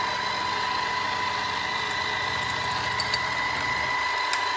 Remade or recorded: recorded